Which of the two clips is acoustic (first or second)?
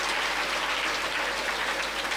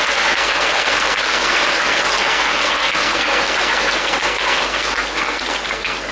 first